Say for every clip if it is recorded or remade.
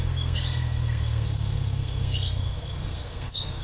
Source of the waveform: remade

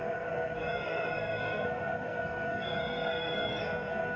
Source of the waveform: remade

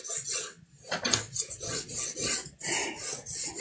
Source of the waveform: recorded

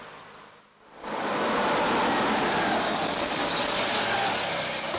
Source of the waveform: recorded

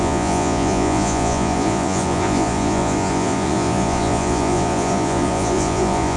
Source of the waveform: remade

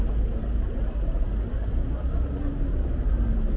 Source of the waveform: recorded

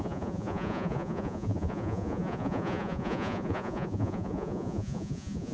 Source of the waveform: remade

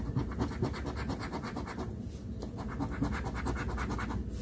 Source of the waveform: recorded